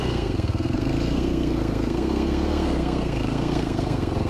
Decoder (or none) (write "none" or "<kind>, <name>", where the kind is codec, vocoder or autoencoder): codec, SNAC